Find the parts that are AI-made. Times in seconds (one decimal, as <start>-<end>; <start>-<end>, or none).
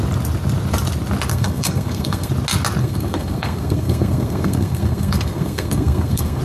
1.3-2.3; 2.8-6.4